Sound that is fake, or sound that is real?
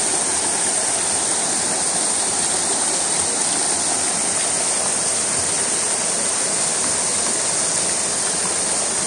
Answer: real